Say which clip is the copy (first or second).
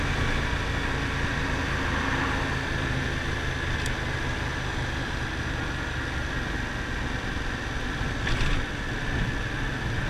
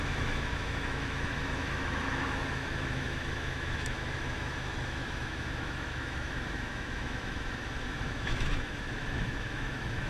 second